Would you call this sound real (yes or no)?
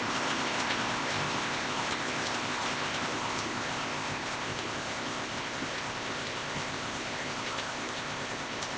no